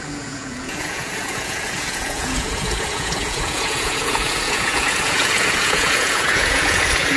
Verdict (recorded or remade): remade